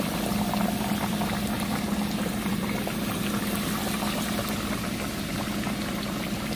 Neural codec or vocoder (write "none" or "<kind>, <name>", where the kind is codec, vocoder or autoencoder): none